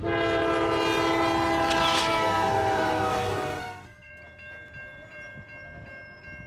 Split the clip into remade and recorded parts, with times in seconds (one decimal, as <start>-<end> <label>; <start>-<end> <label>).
0.0-2.0 recorded; 2.0-4.1 remade; 4.1-6.5 recorded